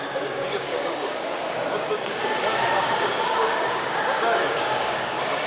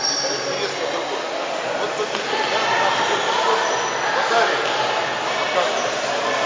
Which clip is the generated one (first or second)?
first